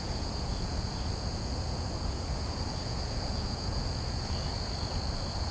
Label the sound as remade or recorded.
remade